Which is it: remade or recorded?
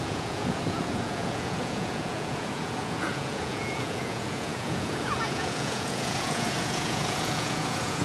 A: remade